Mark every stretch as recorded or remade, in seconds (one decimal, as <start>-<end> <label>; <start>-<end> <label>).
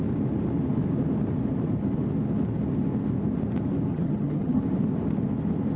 0.0-3.9 recorded; 3.9-4.6 remade; 4.6-5.8 recorded